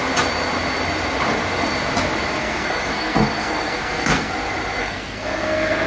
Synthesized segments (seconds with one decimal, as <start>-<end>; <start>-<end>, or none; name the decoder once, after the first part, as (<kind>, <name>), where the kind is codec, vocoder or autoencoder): 2.4-4.3 (codec, SNAC); 4.8-5.9